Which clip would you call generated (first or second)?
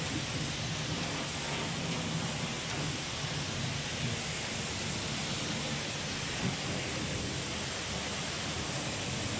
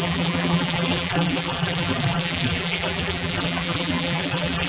second